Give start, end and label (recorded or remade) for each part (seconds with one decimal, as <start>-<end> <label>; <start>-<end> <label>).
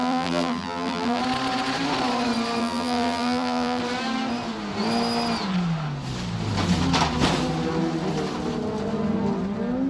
0.0-1.2 remade; 1.2-2.6 recorded; 2.6-3.8 remade; 3.8-9.9 recorded